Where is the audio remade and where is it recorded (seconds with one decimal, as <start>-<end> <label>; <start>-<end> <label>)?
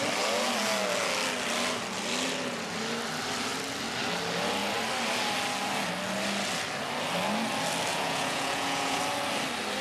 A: 0.0-7.9 recorded; 7.9-9.0 remade; 9.0-9.8 recorded